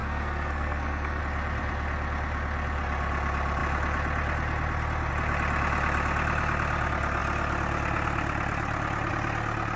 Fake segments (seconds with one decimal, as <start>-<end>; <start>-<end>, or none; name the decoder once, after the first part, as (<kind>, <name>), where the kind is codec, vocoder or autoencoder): 0.0-1.2 (codec, SNAC)